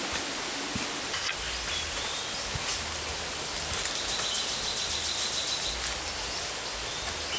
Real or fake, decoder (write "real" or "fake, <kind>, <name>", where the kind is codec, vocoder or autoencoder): real